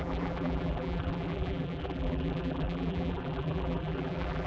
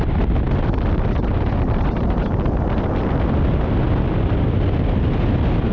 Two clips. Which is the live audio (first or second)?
second